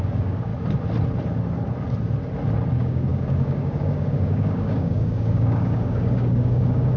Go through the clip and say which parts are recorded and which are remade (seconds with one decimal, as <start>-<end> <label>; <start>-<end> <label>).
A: 0.0-0.5 remade; 0.5-2.7 recorded; 2.7-7.0 remade